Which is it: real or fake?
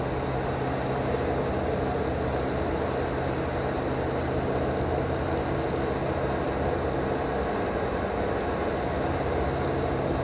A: real